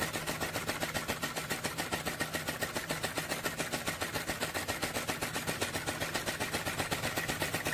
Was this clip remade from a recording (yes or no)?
no